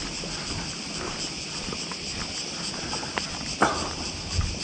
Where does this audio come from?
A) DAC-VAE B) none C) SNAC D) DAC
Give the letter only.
B